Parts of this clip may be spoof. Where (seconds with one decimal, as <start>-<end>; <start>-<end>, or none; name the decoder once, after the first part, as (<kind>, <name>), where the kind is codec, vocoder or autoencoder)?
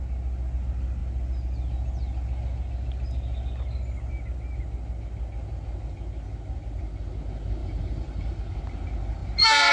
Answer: 7.6-8.3 (vocoder, BigVGAN v2)